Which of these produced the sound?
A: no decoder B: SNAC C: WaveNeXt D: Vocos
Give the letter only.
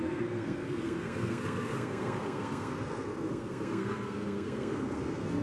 B